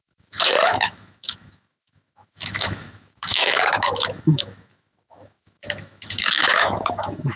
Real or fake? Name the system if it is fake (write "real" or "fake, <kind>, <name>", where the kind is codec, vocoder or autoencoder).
fake, autoencoder, DAC-VAE